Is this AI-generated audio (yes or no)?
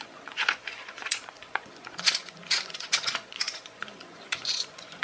yes